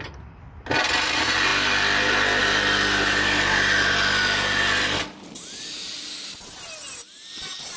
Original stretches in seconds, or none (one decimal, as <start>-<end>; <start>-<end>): 0.0-7.8